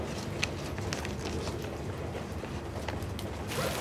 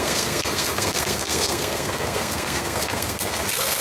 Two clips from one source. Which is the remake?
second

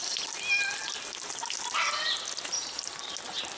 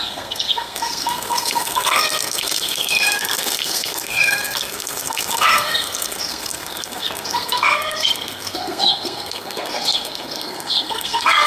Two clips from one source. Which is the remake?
second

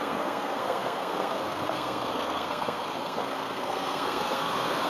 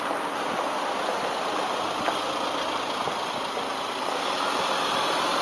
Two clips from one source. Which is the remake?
first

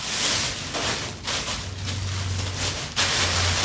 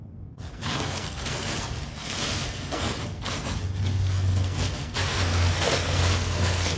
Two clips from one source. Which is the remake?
second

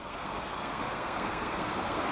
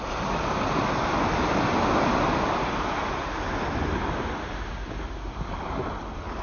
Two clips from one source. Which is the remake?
first